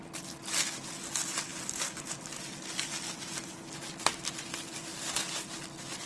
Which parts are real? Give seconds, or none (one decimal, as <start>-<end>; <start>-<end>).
0.0-6.1